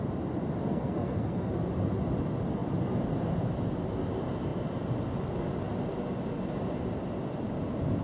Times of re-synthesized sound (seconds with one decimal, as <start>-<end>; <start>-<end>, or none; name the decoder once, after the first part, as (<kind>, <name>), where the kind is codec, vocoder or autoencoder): 0.7-1.5 (codec, SNAC)

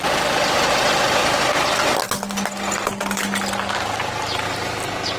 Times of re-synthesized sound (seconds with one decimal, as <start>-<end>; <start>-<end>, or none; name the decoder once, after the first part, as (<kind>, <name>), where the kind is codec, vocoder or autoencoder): none

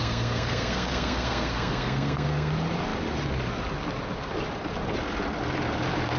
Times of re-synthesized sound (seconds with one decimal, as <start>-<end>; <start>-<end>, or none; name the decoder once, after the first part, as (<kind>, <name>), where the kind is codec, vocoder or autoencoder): 0.0-2.5 (codec, SNAC)

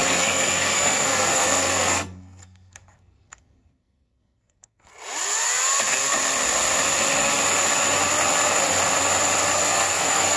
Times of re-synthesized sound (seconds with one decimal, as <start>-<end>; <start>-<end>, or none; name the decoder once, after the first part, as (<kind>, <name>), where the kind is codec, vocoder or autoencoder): 0.0-4.9 (codec, SNAC); 9.6-10.4

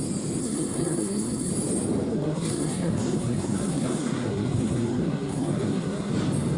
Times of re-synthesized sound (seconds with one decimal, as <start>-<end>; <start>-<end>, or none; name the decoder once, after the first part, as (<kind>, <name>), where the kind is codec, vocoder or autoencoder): 0.4-1.5 (codec, SNAC); 2.1-6.1